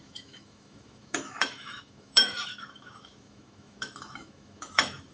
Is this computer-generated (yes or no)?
yes